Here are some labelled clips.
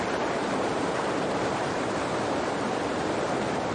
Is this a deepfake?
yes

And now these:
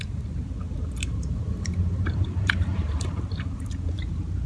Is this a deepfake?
yes